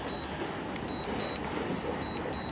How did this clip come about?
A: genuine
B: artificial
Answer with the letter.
A